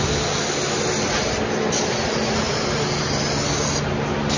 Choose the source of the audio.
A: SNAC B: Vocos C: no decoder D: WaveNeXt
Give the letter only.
C